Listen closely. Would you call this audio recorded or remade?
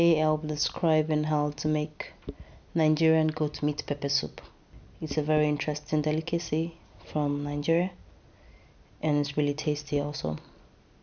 recorded